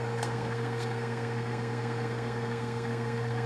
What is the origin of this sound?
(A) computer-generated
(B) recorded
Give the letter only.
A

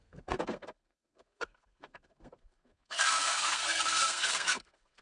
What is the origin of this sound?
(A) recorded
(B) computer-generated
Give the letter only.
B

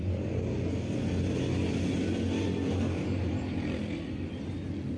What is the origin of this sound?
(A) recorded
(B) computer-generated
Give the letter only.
A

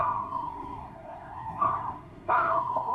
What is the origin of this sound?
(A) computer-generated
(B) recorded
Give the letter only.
A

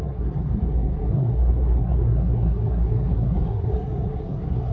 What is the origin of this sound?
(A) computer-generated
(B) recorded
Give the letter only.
A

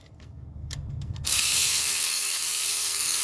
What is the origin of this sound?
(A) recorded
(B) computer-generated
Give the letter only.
B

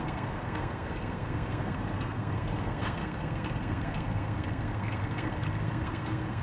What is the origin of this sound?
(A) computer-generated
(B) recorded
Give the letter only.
A